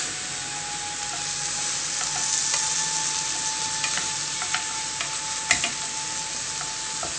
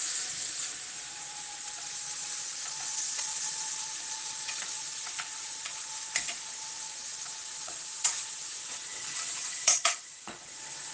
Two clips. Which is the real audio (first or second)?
first